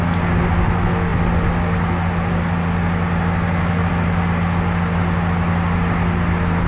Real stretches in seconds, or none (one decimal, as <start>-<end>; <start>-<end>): 0.0-6.7